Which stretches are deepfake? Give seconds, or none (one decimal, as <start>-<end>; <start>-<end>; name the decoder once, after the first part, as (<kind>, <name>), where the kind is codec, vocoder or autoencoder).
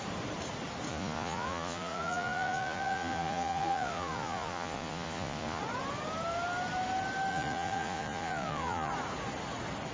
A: 0.9-5.6 (vocoder, Vocos); 7.3-8.9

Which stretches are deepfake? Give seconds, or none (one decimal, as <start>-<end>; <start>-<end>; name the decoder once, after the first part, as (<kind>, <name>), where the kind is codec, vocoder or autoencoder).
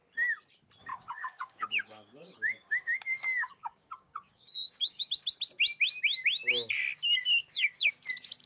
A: 0.9-5.1 (codec, DAC); 7.4-7.9